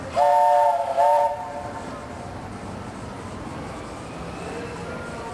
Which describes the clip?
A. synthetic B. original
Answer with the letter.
B